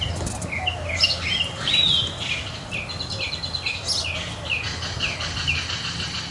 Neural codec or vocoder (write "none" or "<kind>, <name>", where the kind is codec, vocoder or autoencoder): none